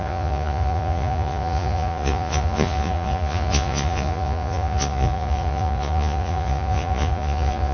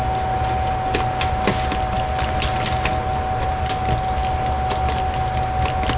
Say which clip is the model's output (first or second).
first